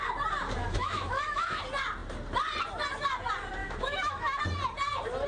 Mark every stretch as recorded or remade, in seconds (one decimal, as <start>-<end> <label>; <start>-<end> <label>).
0.0-0.6 recorded; 0.6-1.6 remade; 1.6-3.6 recorded; 3.6-4.4 remade; 4.4-5.3 recorded